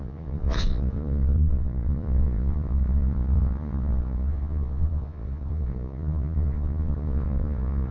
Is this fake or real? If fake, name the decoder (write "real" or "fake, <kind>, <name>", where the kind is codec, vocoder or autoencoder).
fake, vocoder, Vocos